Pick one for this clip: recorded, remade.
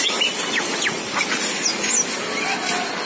recorded